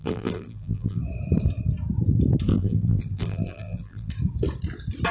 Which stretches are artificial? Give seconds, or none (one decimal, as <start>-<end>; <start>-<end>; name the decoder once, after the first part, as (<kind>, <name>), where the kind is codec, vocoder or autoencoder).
0.0-1.0 (vocoder, BigVGAN v2); 2.5-4.1